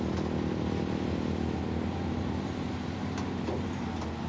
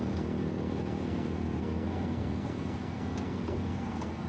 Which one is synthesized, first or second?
second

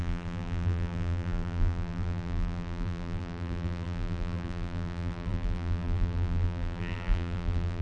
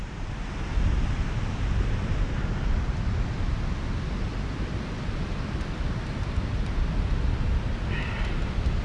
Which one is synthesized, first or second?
first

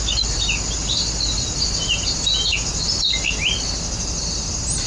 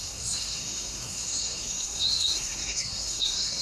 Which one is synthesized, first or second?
second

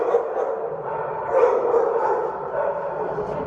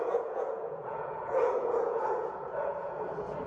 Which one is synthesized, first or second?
second